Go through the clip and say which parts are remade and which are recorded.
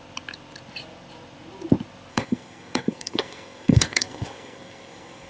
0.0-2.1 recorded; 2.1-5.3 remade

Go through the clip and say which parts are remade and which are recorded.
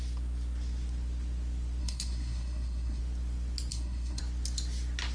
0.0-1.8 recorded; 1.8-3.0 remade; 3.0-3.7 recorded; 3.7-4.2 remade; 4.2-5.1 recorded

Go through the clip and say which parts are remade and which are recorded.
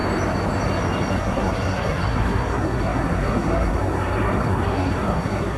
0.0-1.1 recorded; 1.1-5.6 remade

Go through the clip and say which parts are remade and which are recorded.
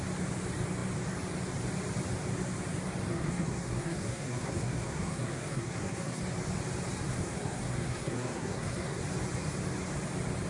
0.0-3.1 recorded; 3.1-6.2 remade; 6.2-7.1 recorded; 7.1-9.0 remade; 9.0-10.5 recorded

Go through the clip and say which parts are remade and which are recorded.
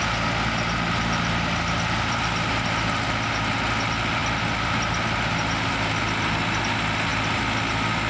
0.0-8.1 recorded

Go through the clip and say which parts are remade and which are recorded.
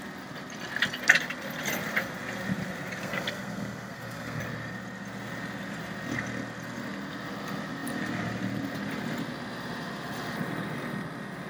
0.0-3.0 recorded; 3.0-4.4 remade; 4.4-11.5 recorded